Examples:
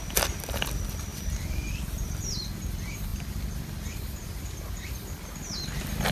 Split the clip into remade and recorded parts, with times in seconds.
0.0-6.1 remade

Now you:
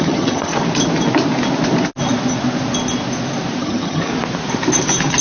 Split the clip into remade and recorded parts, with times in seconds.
0.0-0.5 remade; 0.5-3.6 recorded; 3.6-4.1 remade; 4.1-5.2 recorded

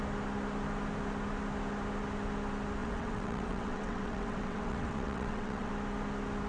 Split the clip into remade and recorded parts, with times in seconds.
0.0-2.8 recorded; 2.8-5.7 remade; 5.7-6.5 recorded